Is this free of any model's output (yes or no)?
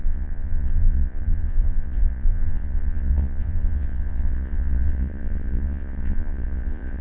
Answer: no